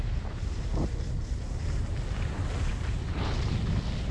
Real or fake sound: real